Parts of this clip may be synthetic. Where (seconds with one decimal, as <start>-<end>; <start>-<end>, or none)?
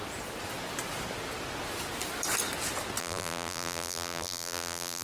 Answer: 3.0-5.0